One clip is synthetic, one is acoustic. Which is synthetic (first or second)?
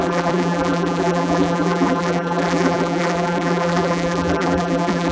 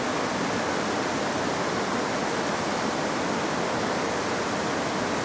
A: first